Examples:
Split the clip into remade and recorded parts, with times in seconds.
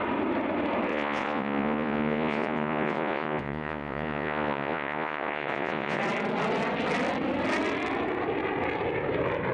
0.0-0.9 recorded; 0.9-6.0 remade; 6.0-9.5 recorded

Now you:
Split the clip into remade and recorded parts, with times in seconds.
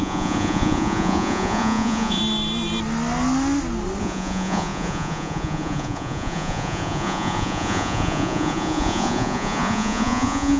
0.0-2.2 remade; 2.2-4.0 recorded; 4.0-10.6 remade